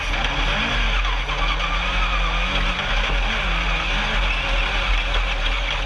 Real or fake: real